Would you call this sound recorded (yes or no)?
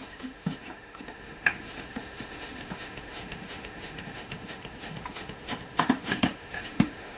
no